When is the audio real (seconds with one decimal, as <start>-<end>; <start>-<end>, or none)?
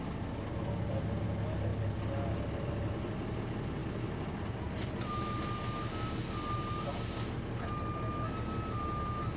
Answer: 0.0-9.4